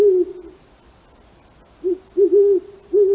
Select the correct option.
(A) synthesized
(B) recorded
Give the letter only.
B